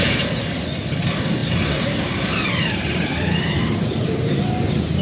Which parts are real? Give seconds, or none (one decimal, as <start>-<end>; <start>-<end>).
0.0-1.4; 4.4-5.0